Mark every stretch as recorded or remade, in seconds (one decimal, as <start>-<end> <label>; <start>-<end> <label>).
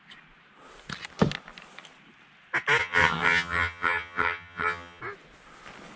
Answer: 0.0-2.8 recorded; 2.8-5.0 remade; 5.0-6.0 recorded